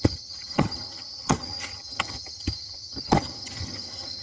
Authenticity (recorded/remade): remade